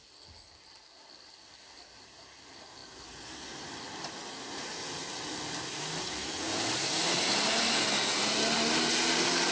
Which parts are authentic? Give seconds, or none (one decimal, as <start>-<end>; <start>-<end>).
0.0-9.5